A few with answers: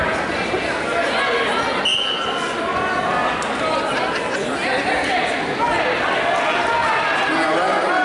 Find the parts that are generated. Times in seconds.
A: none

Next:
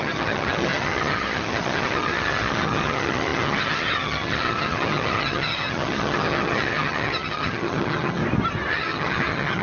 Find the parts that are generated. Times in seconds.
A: 0.0-8.2 (vocoder, HiFi-GAN); 8.7-9.6

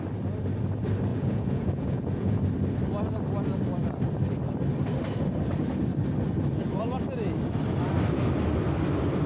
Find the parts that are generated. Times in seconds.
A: 1.1-2.4 (vocoder, Vocos)

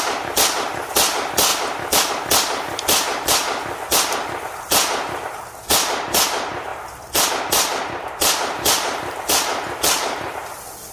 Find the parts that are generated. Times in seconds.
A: 0.0-1.5 (vocoder, BigVGAN v2); 2.1-3.4; 4.4-10.9

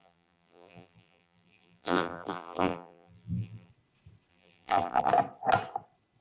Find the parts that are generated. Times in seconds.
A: 0.0-3.7 (vocoder, BigVGAN v2); 4.3-5.1

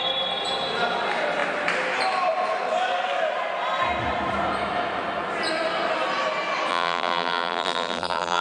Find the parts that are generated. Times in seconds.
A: 6.7-8.4 (vocoder, BigVGAN v2)

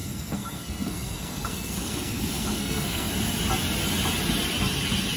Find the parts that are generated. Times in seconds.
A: 0.0-3.1 (codec, SNAC)

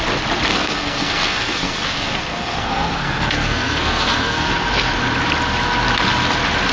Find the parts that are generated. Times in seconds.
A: 0.5-4.5 (codec, SNAC)